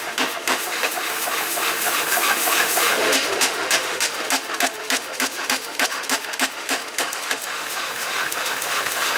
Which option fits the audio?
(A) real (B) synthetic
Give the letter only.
B